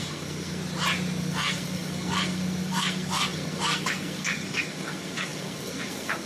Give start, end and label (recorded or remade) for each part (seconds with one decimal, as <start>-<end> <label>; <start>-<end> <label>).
0.0-0.6 remade; 0.6-1.2 recorded; 1.2-6.3 remade